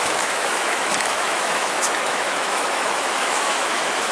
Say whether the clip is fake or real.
fake